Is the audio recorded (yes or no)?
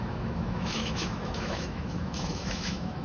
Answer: no